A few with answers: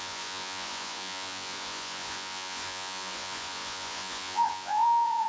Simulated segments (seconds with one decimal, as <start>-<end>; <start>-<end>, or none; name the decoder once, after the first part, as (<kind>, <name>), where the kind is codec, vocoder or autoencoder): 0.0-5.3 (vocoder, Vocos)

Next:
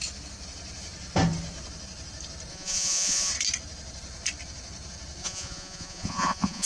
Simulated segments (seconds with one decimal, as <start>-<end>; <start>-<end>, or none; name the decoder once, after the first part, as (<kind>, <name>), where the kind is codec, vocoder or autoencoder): 2.5-3.3 (vocoder, Vocos); 5.2-6.7

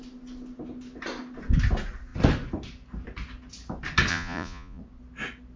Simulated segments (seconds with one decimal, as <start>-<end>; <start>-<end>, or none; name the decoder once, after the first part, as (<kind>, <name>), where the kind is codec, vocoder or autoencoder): 4.1-4.8 (vocoder, Vocos)